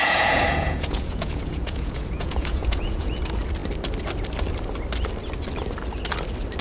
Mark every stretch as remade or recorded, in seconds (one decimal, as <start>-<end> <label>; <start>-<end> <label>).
0.0-3.1 remade; 3.1-6.6 recorded